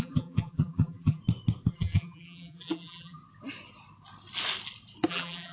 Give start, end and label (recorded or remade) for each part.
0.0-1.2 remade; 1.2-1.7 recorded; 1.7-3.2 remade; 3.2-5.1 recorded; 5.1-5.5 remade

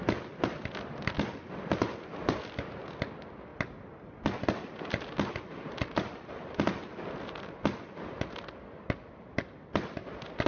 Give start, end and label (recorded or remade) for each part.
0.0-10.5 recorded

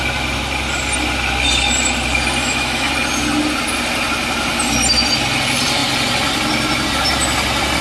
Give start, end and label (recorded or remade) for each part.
0.0-2.4 recorded; 2.4-2.9 remade; 2.9-7.8 recorded

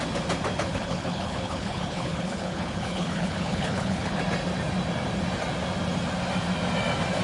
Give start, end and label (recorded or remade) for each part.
0.0-0.6 recorded; 0.6-4.2 remade; 4.2-7.2 recorded